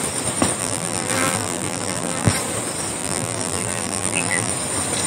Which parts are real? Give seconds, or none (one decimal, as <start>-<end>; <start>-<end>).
0.0-0.6; 2.3-3.0; 4.5-5.1